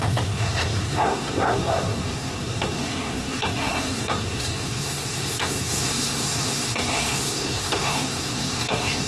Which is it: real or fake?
fake